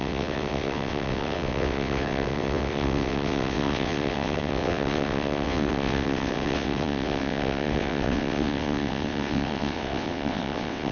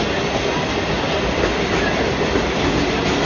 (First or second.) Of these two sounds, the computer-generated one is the first